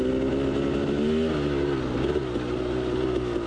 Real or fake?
real